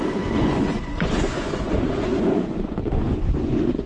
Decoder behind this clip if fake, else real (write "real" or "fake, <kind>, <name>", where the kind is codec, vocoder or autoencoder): fake, vocoder, Vocos